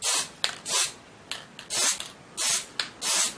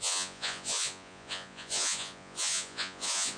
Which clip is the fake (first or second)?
second